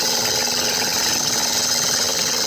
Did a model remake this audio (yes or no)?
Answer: no